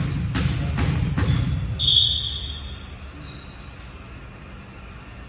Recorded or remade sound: recorded